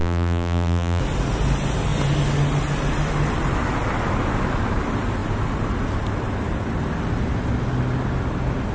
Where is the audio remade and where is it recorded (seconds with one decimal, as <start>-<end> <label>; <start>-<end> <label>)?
0.0-1.0 remade; 1.0-8.7 recorded